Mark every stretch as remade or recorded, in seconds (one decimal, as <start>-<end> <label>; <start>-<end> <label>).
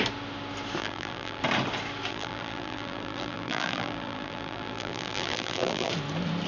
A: 0.0-0.8 recorded; 0.8-1.4 remade; 1.4-2.1 recorded; 2.1-5.9 remade; 5.9-6.5 recorded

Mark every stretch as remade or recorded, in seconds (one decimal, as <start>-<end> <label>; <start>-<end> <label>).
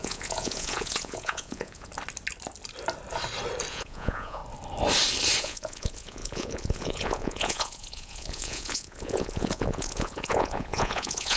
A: 0.0-1.9 remade; 1.9-3.7 recorded; 3.7-4.4 remade; 4.4-5.4 recorded; 5.4-11.4 remade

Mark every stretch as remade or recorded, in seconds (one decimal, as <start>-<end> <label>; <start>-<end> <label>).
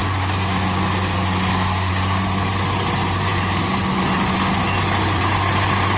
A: 0.0-6.0 recorded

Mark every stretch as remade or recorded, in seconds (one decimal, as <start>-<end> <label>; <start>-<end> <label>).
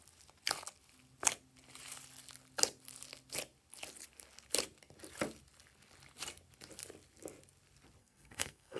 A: 0.0-8.0 recorded; 8.0-8.8 remade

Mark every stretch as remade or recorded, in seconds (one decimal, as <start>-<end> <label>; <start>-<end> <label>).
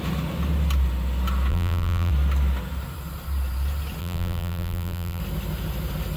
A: 0.0-1.5 recorded; 1.5-2.1 remade; 2.1-4.0 recorded; 4.0-5.2 remade; 5.2-6.2 recorded